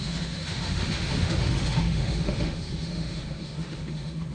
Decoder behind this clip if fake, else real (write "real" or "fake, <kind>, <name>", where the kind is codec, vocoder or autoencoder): fake, autoencoder, DAC-VAE